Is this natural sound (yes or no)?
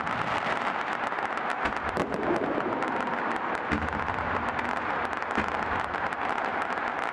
yes